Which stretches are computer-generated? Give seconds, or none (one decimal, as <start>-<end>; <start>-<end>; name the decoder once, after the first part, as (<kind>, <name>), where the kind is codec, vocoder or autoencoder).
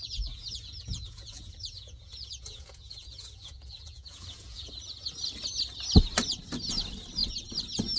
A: 0.0-4.7 (vocoder, Vocos)